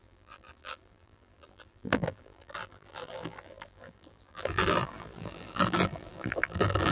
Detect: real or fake fake